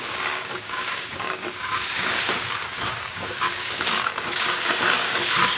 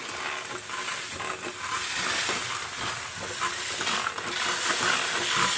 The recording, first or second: second